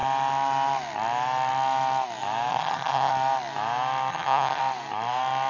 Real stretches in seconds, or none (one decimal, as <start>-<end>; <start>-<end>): 0.0-2.5; 3.1-4.1; 4.6-5.5